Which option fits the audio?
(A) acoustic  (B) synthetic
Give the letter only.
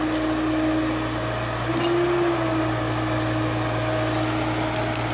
A